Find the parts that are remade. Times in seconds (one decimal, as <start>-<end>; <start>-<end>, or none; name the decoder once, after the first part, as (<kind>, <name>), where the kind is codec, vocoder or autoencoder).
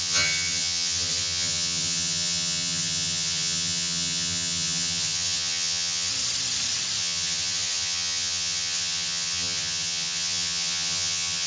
0.0-6.1 (vocoder, HiFi-GAN); 7.0-11.5